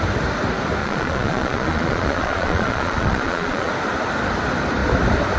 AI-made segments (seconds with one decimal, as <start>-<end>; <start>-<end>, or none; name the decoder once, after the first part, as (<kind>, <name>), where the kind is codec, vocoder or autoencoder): 0.8-3.7 (vocoder, Vocos)